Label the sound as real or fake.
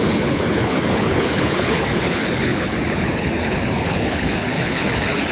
fake